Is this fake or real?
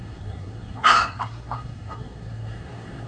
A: fake